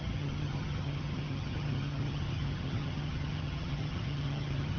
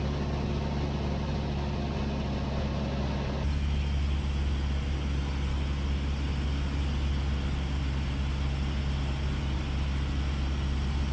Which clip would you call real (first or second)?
second